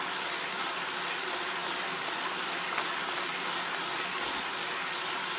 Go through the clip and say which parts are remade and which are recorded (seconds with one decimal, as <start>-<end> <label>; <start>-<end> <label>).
0.0-5.4 recorded